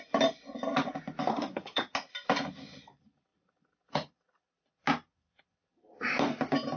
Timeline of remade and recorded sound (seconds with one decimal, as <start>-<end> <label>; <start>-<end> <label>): 0.0-1.3 recorded; 1.3-1.9 remade; 1.9-6.8 recorded